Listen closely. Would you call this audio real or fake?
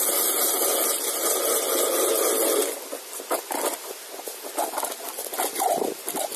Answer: real